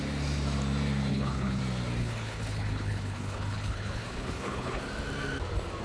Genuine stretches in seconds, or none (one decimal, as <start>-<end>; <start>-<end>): 0.0-1.1; 1.6-2.0; 4.8-5.8